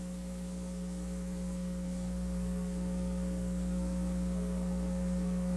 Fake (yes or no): yes